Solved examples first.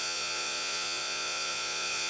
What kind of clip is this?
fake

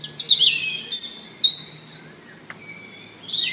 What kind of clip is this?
real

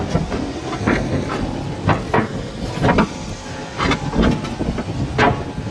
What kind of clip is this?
real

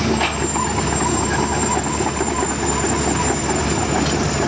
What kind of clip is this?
real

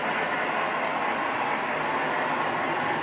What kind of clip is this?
real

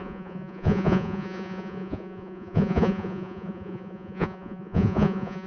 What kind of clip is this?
fake